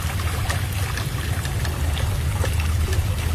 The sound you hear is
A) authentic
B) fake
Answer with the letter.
A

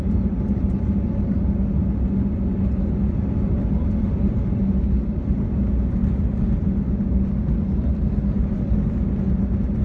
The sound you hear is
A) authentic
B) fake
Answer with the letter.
A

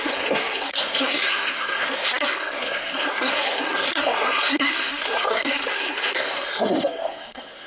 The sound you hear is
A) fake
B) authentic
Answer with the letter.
A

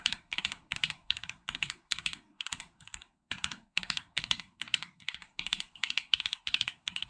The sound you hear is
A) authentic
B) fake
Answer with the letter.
B